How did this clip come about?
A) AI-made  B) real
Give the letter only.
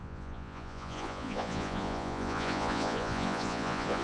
A